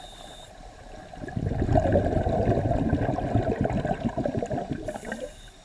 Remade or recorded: recorded